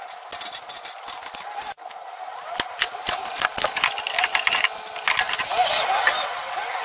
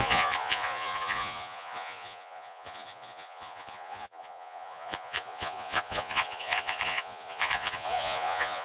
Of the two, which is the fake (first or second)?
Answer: second